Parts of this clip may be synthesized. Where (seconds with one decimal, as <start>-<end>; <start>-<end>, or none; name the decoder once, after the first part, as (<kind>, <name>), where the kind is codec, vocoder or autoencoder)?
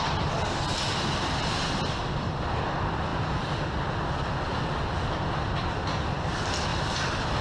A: none